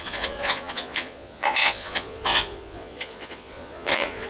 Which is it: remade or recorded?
remade